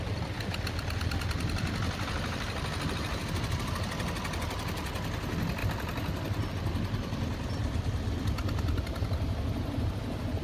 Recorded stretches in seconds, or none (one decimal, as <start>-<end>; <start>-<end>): 0.0-10.4